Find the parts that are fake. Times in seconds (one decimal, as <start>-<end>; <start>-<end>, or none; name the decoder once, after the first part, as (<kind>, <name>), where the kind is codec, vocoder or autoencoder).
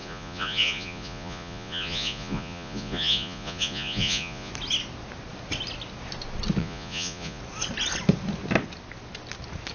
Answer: 0.0-4.5 (vocoder, Vocos); 6.6-7.4